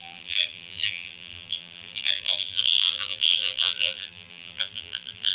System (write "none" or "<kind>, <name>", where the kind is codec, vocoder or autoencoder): vocoder, BigVGAN v2